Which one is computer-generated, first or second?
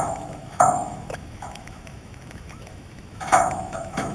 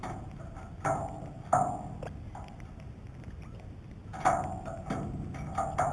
first